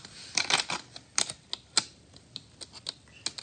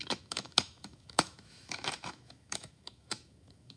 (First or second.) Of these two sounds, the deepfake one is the second